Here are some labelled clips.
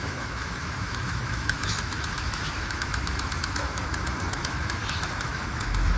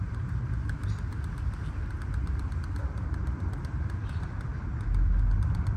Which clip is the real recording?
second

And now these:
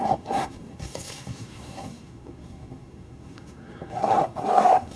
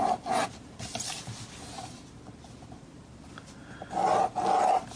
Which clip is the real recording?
second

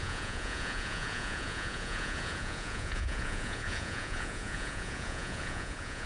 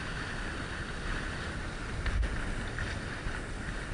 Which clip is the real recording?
second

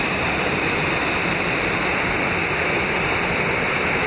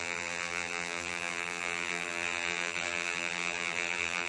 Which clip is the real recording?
first